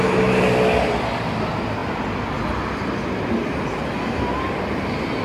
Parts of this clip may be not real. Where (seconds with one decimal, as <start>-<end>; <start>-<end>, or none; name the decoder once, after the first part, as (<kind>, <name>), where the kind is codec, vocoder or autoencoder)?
none